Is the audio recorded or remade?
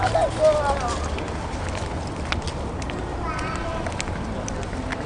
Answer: recorded